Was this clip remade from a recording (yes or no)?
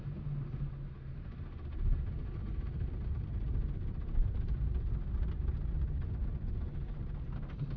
no